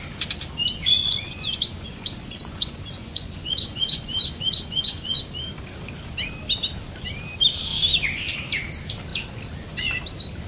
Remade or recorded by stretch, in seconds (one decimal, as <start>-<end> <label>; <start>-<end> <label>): 0.0-1.0 recorded; 1.0-5.2 remade; 5.2-10.5 recorded